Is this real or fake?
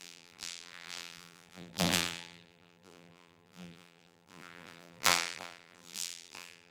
fake